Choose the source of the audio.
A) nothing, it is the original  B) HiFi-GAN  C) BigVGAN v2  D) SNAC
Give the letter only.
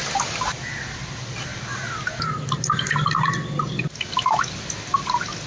A